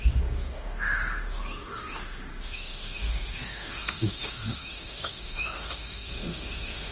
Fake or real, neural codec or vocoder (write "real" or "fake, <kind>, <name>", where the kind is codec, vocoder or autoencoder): fake, autoencoder, DAC-VAE